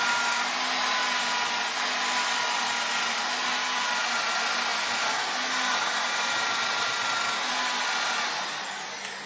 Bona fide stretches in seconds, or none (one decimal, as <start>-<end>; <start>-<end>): 0.0-9.3